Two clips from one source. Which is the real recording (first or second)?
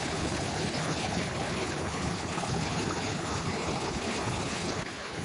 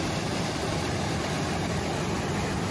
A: second